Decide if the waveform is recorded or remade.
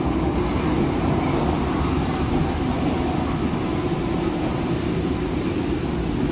recorded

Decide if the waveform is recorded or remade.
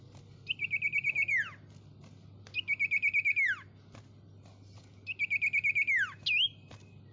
recorded